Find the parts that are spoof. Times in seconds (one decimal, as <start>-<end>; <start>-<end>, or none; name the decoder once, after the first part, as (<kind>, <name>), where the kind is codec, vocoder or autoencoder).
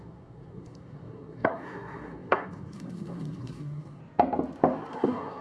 0.0-4.0 (codec, SNAC); 4.9-5.4